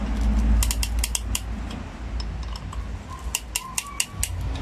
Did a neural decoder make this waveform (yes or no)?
no